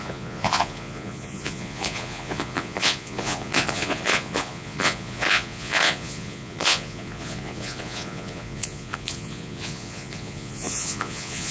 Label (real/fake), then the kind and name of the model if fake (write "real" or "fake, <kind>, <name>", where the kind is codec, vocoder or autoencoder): fake, vocoder, Vocos